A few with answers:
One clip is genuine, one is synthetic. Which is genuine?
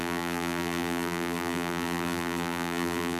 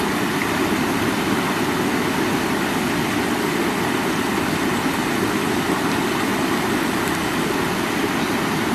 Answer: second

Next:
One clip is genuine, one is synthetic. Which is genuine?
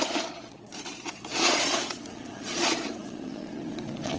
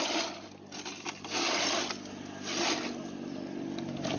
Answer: second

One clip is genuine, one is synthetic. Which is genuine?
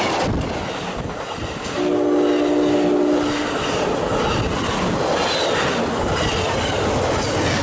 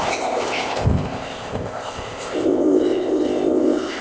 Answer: first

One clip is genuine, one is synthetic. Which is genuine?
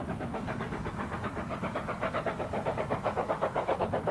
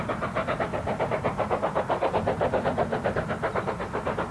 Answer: second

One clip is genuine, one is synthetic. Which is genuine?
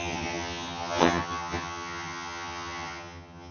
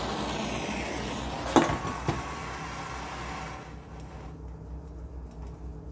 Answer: second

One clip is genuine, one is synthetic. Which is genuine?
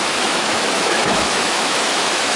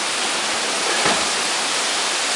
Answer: second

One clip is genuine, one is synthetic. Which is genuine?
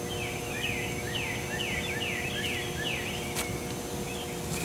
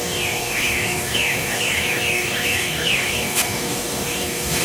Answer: first